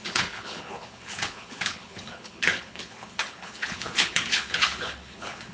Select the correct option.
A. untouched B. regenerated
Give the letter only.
B